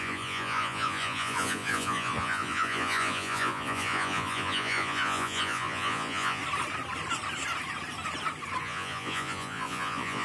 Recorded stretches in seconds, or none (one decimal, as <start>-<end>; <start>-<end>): 6.4-8.6